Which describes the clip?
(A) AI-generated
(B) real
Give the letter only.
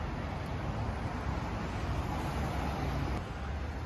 B